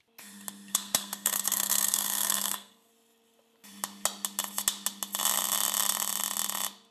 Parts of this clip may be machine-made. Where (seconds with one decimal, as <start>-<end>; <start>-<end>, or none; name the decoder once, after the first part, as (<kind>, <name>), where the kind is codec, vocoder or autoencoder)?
0.7-2.9 (codec, SNAC)